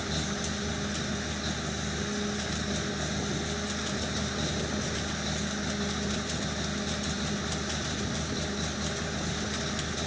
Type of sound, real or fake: real